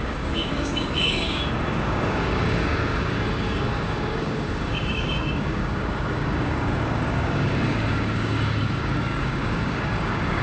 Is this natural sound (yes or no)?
no